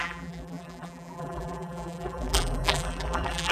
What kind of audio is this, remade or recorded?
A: remade